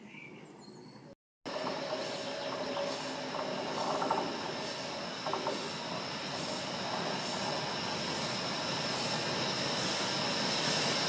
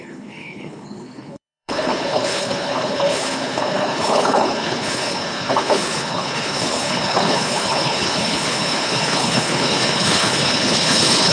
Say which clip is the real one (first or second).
first